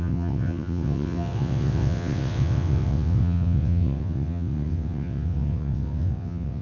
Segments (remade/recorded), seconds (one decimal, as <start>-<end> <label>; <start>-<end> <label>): 0.0-6.6 remade